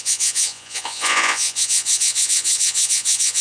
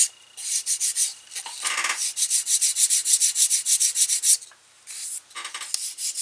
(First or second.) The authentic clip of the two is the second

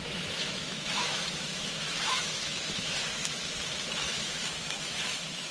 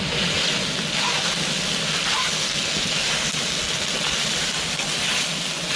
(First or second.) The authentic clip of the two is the second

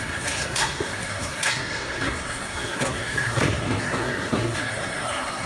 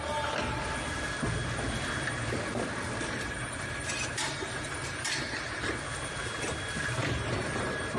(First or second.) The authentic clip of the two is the second